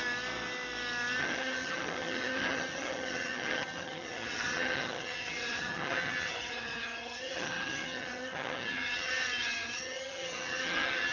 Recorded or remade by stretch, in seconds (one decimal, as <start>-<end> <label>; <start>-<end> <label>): 0.0-1.2 recorded; 1.2-11.1 remade